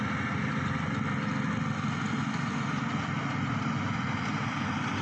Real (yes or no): yes